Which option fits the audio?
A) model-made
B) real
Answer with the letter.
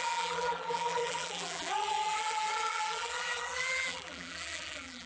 A